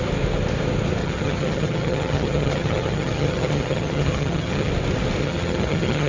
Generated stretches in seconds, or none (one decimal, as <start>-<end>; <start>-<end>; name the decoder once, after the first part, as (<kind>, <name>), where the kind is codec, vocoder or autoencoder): 1.0-4.7 (vocoder, HiFi-GAN); 5.2-6.1